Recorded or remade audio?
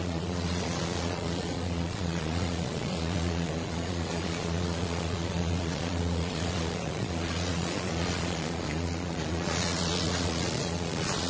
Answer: remade